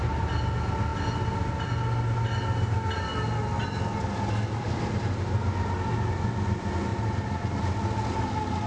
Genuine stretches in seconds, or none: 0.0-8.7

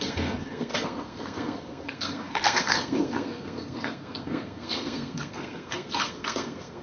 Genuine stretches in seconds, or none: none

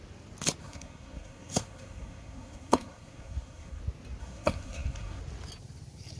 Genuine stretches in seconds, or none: 0.0-0.6; 3.8-4.2; 5.2-6.2

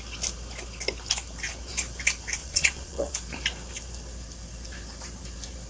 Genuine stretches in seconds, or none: 0.0-2.4; 3.1-5.7

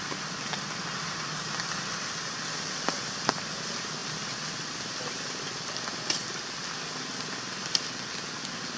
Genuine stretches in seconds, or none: 0.0-8.8

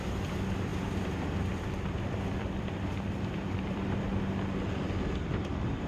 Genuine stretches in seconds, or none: 0.0-0.7; 4.2-5.9

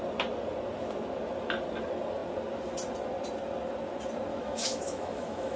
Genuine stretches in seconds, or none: 0.0-4.3

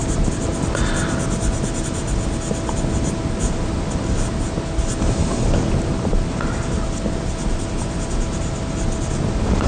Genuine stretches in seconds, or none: 0.0-9.7